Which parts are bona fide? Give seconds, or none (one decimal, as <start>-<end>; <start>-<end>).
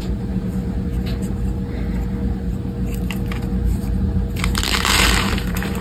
0.9-4.4